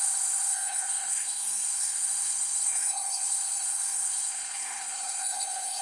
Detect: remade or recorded remade